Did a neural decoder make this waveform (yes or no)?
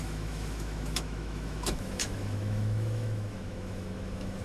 yes